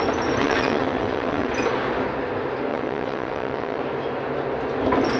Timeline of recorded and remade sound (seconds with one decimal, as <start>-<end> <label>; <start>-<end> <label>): 0.0-0.4 recorded; 0.4-1.5 remade; 1.5-2.7 recorded; 2.7-3.8 remade; 3.8-5.2 recorded